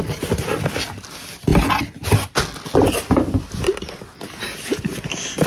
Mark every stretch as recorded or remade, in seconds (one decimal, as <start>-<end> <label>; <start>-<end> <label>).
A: 0.0-5.5 recorded